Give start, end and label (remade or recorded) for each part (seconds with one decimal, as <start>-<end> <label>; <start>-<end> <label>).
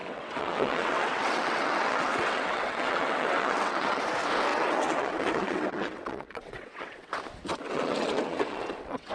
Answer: 0.0-4.0 remade; 4.0-4.5 recorded; 4.5-7.1 remade; 7.1-7.5 recorded; 7.5-9.1 remade